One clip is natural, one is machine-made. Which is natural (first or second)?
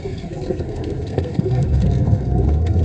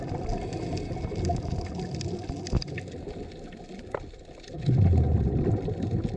second